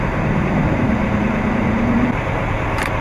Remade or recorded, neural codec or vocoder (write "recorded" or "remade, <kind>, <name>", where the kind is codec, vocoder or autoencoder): remade, vocoder, BigVGAN v2